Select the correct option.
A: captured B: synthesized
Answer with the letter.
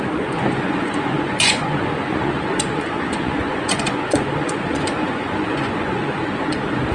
B